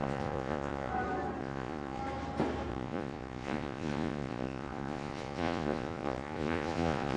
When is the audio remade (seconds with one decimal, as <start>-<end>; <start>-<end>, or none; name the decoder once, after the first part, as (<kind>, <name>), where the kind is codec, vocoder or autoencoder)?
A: 0.0-0.9 (vocoder, Vocos); 1.4-2.0; 2.7-7.2